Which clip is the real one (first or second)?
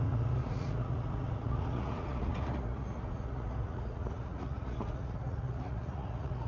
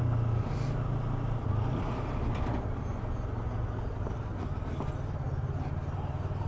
second